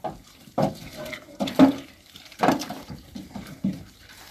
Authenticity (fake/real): fake